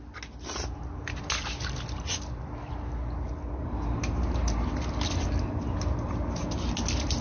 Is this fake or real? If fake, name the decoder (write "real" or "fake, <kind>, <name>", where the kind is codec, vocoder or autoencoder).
real